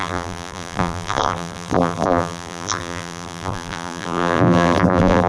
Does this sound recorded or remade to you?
remade